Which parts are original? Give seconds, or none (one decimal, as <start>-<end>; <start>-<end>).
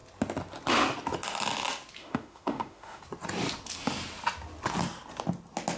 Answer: 0.0-2.0; 3.0-5.8